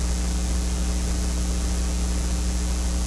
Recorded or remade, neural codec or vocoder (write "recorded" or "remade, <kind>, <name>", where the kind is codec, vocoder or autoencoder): recorded